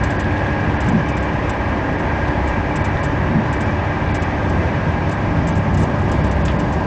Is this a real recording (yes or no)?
yes